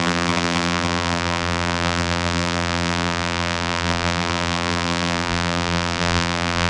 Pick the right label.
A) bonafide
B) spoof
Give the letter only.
B